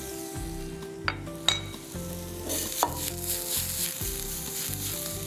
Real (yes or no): yes